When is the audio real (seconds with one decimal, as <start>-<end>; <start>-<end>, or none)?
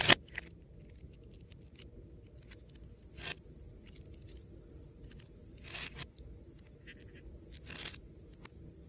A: 0.0-8.9